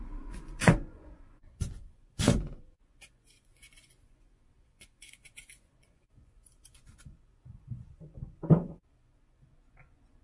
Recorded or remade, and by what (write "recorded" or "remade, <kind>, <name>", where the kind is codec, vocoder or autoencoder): remade, vocoder, Vocos